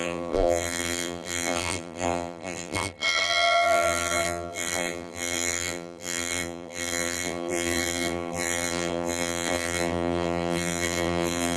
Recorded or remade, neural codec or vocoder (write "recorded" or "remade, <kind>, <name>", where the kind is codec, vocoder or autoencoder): remade, vocoder, BigVGAN v2